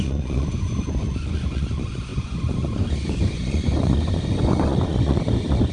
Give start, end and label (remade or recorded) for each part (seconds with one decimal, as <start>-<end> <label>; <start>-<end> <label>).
0.0-5.7 remade